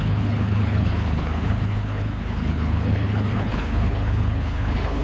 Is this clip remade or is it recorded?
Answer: remade